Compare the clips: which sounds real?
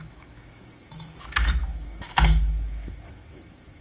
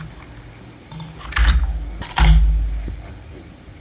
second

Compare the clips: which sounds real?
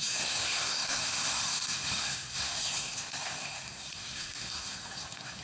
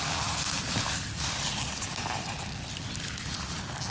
second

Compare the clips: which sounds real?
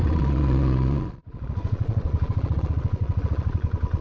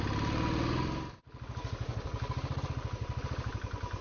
second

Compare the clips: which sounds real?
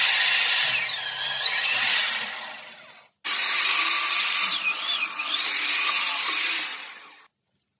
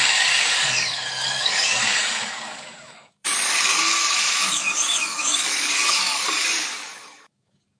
first